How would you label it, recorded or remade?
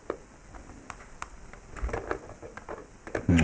recorded